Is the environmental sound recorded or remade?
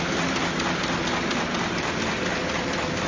recorded